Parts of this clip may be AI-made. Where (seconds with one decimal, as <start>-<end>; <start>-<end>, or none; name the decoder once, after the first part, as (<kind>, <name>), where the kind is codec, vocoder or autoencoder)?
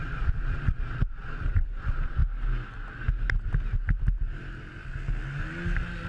0.0-2.2 (vocoder, Vocos)